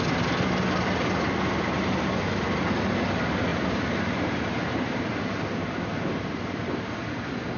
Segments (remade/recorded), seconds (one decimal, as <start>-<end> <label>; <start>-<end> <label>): 0.0-3.5 recorded; 3.5-6.0 remade; 6.0-7.6 recorded